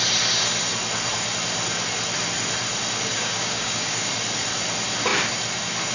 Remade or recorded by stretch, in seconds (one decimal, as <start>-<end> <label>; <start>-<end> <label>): 0.0-3.1 recorded; 3.1-4.1 remade; 4.1-5.9 recorded